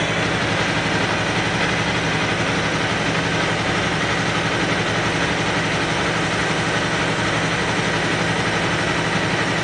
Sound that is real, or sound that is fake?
real